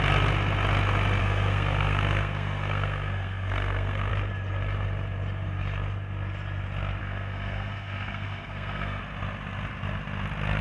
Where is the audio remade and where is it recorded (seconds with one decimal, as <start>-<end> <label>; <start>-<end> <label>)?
0.0-1.2 recorded; 1.2-4.1 remade; 4.1-7.0 recorded; 7.0-9.0 remade; 9.0-10.6 recorded